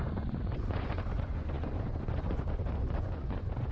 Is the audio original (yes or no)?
no